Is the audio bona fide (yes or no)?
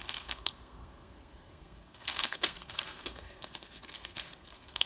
no